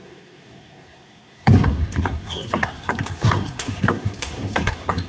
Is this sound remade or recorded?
remade